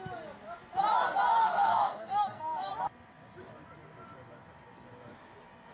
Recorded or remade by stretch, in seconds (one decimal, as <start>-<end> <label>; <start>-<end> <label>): 0.0-1.4 recorded; 1.4-2.7 remade; 2.7-5.7 recorded